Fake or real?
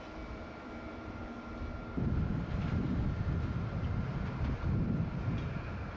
real